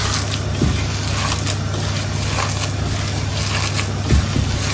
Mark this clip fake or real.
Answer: real